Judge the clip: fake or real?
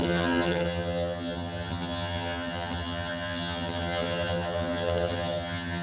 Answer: fake